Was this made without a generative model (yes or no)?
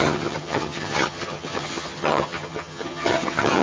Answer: no